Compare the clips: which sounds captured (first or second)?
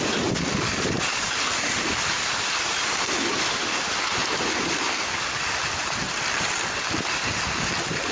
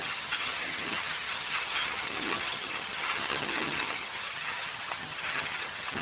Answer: first